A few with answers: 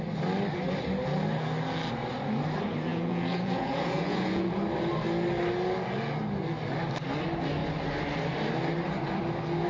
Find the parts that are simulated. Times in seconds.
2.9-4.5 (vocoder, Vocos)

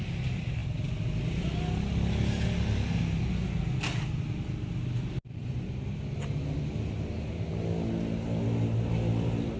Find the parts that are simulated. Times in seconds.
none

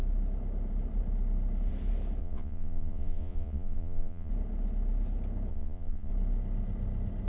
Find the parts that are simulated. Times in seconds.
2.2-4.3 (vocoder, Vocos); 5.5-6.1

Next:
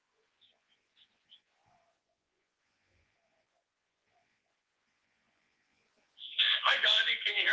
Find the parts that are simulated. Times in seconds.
0.0-7.5 (vocoder, Vocos)